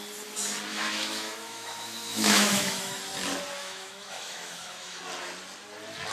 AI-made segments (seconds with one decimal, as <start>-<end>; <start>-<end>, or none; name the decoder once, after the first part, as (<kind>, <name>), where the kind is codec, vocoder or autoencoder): 0.7-3.0 (autoencoder, DAC-VAE); 3.6-5.0